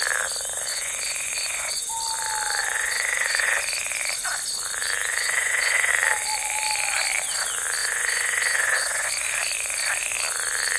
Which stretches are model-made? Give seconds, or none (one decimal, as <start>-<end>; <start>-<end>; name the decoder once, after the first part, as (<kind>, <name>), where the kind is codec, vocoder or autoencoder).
0.7-1.9 (vocoder, Vocos); 2.6-3.6; 5.1-5.9; 7.8-9.1